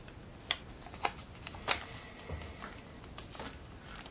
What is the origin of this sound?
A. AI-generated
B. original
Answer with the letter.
B